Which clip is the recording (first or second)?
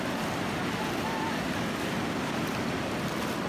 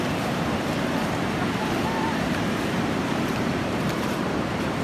first